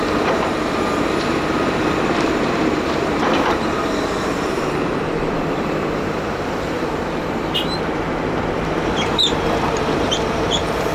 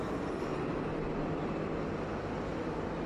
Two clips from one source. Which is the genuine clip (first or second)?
second